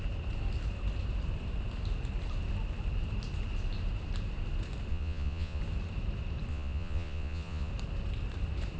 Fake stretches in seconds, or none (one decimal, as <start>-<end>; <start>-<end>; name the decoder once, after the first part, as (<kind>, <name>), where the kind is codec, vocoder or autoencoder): 4.9-5.6 (vocoder, Vocos); 6.5-7.7